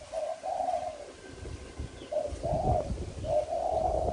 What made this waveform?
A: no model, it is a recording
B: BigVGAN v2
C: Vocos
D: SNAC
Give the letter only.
A